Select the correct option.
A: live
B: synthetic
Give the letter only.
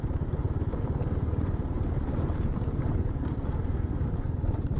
A